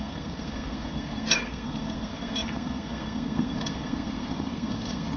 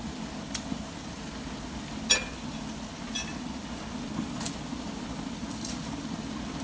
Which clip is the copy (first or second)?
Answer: first